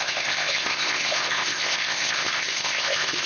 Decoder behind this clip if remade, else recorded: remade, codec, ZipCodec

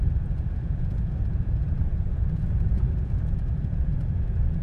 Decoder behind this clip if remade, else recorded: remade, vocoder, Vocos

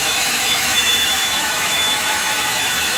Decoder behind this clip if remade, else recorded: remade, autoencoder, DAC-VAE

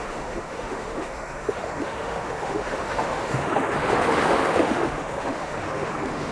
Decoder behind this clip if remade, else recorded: remade, autoencoder, DAC-VAE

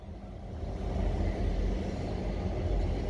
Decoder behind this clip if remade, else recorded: recorded